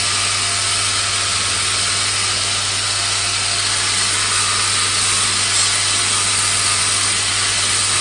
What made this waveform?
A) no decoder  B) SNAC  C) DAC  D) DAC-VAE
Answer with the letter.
A